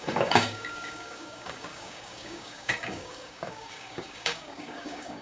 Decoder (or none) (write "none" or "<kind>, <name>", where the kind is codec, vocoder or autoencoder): codec, DAC